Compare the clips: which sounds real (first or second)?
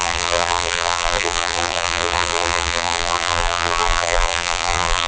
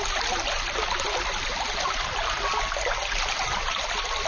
second